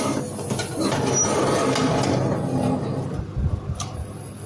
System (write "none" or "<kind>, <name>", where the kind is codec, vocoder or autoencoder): none